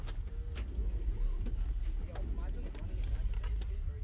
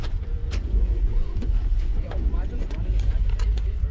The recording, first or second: first